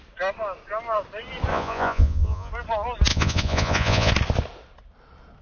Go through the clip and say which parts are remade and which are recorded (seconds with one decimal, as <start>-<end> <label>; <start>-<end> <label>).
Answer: 0.0-1.5 recorded; 1.5-2.5 remade; 2.5-3.1 recorded; 3.1-4.1 remade; 4.1-5.4 recorded